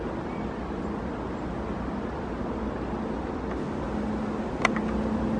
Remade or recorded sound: recorded